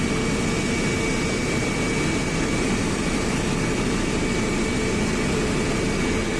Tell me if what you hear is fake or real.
fake